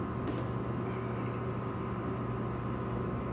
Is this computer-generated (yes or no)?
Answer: no